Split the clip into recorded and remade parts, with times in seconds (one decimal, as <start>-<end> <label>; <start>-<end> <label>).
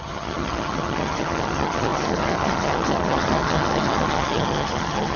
0.0-5.2 remade